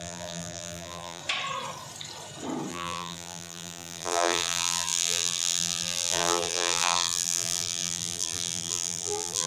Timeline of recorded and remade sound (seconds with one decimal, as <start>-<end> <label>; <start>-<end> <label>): 0.0-1.2 remade; 1.2-2.7 recorded; 2.7-9.5 remade